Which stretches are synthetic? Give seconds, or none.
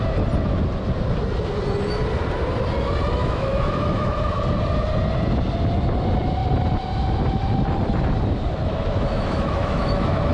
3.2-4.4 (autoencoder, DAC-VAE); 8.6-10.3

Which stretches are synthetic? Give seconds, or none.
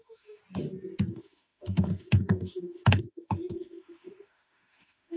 0.0-0.4 (autoencoder, DAC-VAE); 1.1-5.2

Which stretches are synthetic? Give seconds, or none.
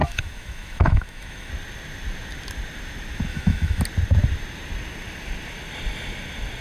0.0-1.5 (autoencoder, DAC-VAE); 3.3-3.8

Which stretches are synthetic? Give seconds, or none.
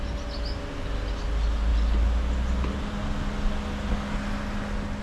none